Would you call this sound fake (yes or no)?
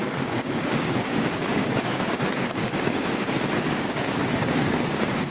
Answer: yes